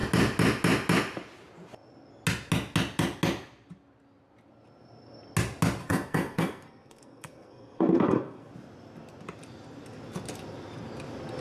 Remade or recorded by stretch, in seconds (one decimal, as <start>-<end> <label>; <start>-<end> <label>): 0.0-5.8 recorded; 5.8-8.5 remade; 8.5-11.4 recorded